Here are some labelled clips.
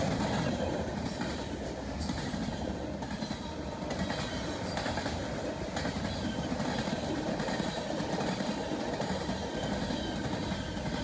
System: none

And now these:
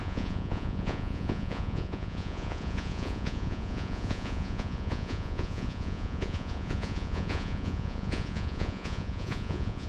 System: vocoder, Vocos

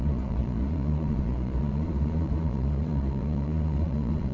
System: vocoder, Vocos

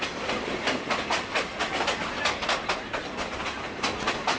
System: none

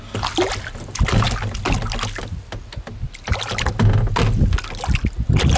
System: none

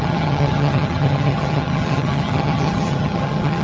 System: vocoder, HiFi-GAN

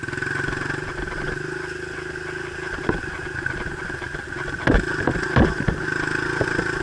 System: none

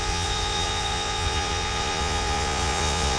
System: vocoder, Vocos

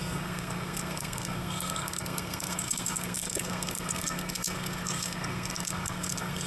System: codec, SNAC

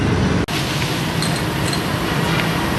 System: none